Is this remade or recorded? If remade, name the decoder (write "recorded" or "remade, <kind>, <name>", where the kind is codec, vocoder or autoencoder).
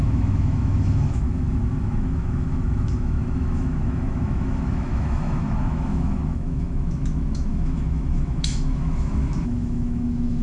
remade, autoencoder, DAC-VAE